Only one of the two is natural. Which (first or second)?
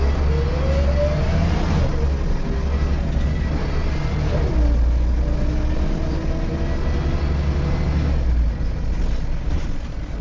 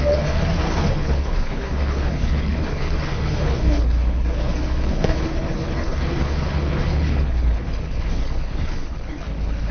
first